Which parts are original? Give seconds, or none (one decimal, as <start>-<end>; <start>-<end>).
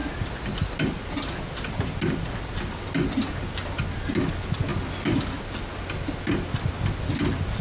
0.0-7.6